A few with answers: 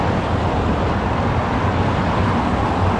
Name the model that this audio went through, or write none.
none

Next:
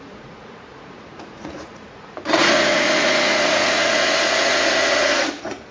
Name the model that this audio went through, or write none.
vocoder, Vocos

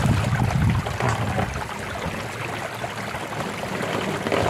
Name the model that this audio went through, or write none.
none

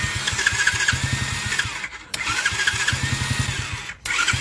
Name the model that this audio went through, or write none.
none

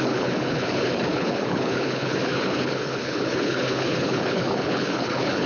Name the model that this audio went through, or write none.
codec, HILCodec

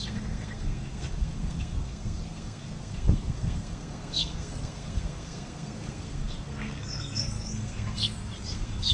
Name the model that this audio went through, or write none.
codec, SNAC